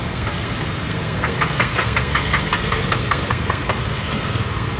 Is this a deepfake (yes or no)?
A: yes